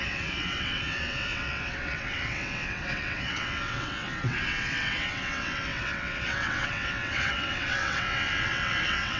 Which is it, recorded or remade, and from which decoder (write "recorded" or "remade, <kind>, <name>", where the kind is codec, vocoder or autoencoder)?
remade, vocoder, WaveNeXt